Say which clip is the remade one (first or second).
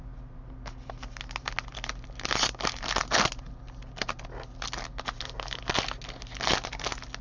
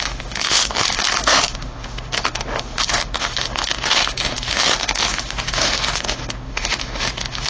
second